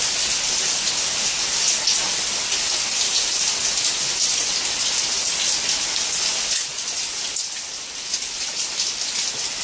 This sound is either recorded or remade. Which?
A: recorded